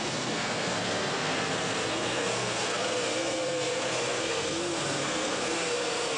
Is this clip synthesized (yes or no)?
yes